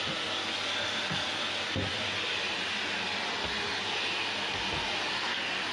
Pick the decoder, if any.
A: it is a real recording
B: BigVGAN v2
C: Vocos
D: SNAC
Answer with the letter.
A